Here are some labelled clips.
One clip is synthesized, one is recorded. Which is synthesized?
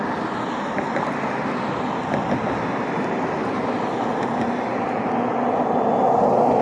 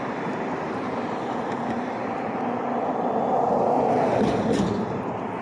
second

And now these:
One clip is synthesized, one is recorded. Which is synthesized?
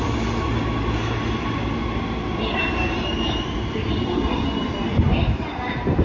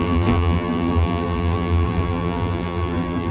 second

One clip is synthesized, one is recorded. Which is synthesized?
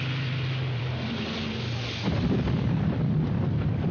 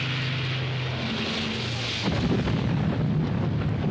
first